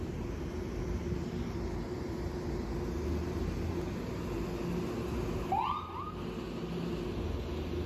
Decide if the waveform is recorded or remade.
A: recorded